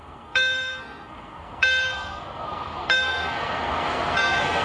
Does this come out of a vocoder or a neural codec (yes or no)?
yes